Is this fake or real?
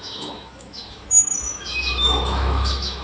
fake